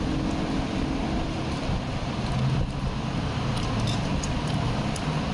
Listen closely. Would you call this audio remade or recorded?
recorded